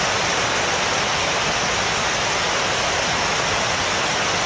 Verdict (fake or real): real